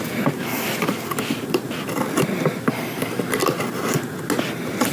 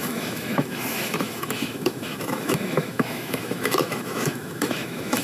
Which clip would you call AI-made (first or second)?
second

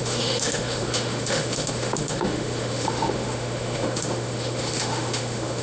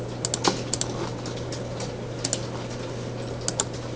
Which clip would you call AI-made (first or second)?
first